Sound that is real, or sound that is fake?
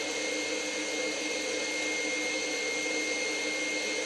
real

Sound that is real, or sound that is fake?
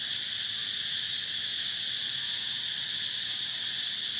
real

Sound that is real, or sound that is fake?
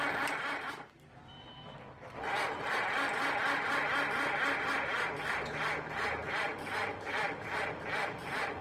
real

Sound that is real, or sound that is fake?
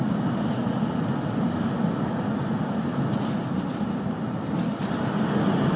real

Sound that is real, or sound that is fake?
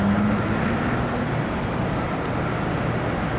real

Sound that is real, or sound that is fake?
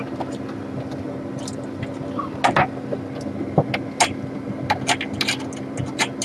real